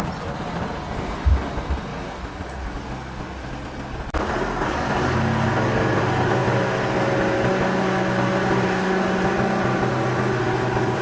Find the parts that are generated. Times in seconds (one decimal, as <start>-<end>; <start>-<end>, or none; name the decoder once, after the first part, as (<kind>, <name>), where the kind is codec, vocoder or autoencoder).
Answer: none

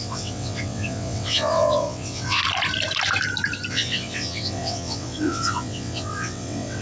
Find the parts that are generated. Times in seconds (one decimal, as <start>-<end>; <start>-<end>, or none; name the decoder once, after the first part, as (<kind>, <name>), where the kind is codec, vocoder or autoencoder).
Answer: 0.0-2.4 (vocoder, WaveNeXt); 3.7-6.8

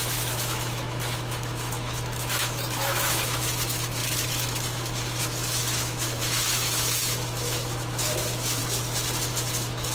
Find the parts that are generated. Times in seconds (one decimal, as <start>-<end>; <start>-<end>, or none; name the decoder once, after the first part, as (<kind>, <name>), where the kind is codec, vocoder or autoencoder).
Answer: 0.0-8.6 (autoencoder, DAC-VAE); 9.3-9.9